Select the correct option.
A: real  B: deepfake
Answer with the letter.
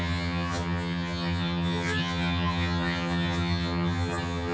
B